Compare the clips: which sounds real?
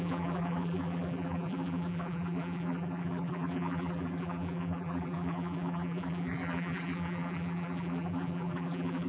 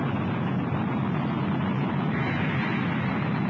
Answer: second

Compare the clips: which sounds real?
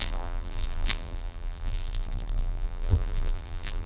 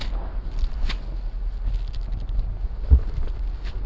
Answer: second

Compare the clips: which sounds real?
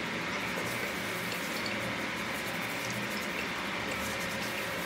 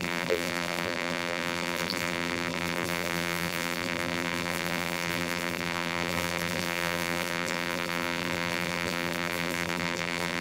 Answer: first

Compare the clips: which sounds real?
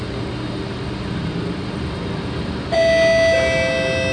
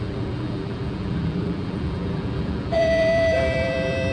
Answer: first